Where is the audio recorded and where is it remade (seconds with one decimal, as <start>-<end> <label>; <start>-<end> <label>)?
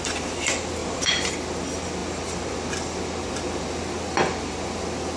0.0-0.8 recorded; 0.8-1.3 remade; 1.3-5.2 recorded